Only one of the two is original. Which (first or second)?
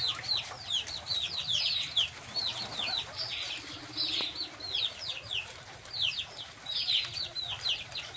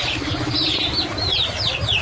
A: first